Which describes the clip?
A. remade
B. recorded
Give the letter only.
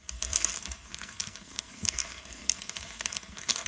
A